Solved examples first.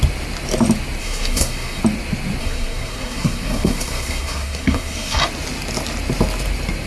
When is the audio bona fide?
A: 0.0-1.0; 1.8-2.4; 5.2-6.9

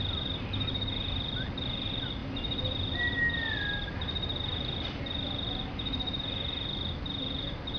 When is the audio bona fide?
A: 0.0-7.8

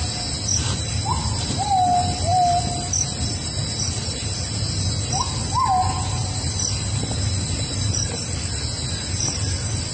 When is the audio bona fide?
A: 0.0-7.0; 7.8-9.9

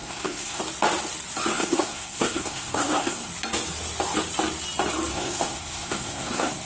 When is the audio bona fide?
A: 0.6-1.5; 3.3-5.1

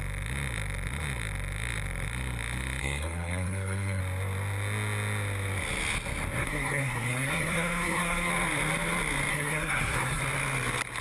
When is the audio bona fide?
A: 0.0-2.8; 4.0-6.4; 8.3-9.3; 10.2-11.0

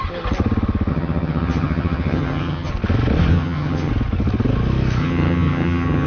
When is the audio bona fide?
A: 0.0-0.9; 2.7-3.3; 3.9-5.0